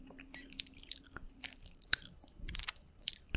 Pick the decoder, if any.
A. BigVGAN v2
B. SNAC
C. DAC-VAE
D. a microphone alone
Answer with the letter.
A